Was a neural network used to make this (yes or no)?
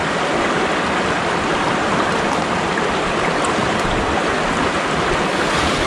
no